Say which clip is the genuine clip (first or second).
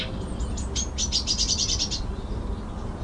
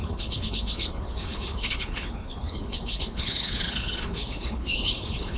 first